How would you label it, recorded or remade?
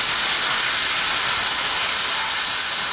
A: recorded